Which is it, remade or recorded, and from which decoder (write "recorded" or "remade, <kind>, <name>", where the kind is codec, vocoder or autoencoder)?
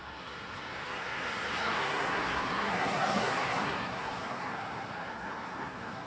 remade, codec, SNAC